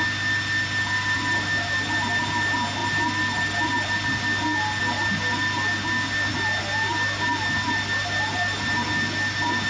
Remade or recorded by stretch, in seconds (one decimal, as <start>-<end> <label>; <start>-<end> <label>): 0.0-9.7 recorded